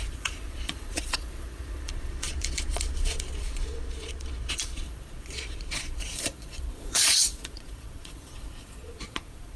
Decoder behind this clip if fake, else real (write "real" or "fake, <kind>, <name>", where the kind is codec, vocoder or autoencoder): fake, vocoder, Vocos